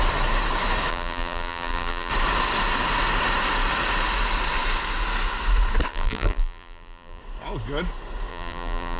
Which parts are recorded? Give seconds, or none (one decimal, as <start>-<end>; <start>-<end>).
0.0-0.9; 2.1-5.9; 7.2-8.3